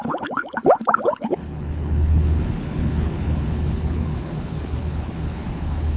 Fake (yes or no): yes